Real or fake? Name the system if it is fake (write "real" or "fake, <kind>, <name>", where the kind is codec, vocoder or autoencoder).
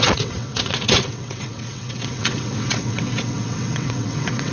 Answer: fake, vocoder, WaveNeXt